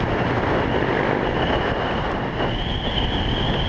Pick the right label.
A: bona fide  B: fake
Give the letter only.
A